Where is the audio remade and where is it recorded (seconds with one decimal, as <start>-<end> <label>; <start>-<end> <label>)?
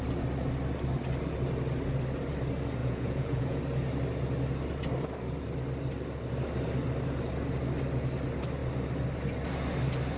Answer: 0.0-2.8 recorded; 2.8-3.6 remade; 3.6-10.2 recorded